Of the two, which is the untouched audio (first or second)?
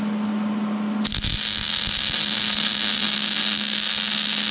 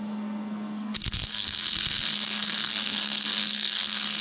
first